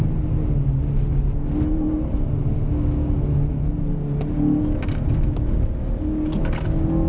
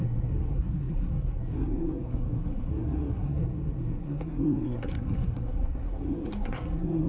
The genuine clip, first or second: first